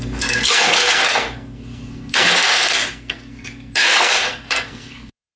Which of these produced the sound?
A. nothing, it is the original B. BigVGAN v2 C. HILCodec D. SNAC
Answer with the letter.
D